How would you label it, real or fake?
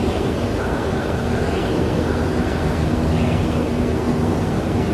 fake